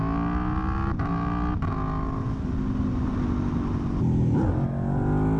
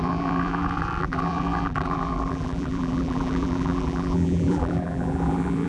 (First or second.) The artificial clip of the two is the second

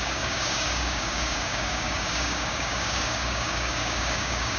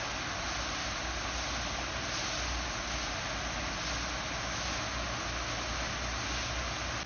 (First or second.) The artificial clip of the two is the first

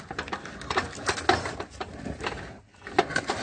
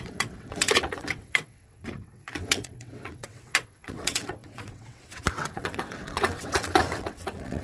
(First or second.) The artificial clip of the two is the second